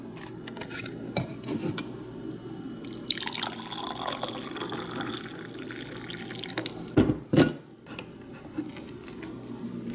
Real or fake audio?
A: real